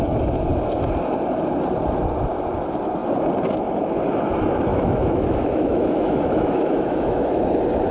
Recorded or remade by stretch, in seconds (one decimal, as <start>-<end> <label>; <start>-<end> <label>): 0.0-4.7 recorded; 4.7-7.5 remade; 7.5-7.9 recorded